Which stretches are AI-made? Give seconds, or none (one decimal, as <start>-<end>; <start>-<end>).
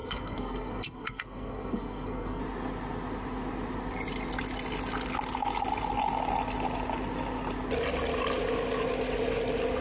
0.0-2.4